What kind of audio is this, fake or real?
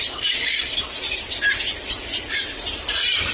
real